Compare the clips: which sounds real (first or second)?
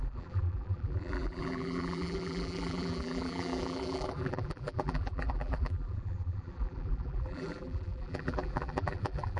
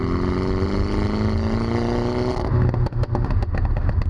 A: second